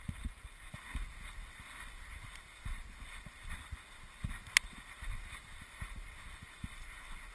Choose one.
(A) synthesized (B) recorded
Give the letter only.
B